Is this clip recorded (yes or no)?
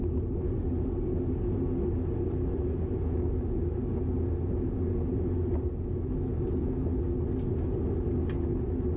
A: yes